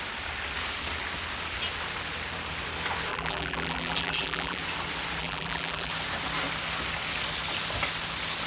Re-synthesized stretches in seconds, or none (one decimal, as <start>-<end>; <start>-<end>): 3.1-4.6; 5.2-5.9